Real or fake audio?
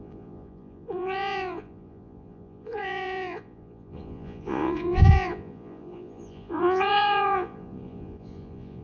fake